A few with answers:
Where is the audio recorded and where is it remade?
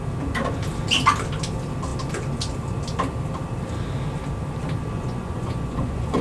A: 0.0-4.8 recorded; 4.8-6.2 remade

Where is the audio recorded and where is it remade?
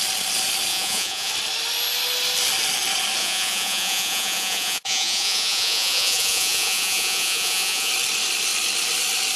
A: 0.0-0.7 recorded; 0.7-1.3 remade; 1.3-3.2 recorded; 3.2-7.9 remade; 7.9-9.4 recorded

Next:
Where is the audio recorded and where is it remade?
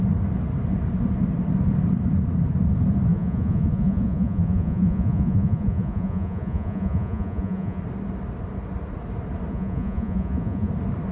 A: 0.0-3.1 recorded; 3.1-7.8 remade; 7.8-9.5 recorded; 9.5-10.7 remade; 10.7-11.1 recorded